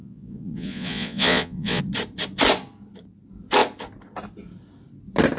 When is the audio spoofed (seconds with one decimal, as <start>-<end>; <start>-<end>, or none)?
0.0-1.8